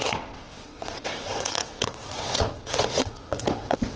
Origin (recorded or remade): remade